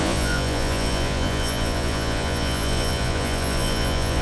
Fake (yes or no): yes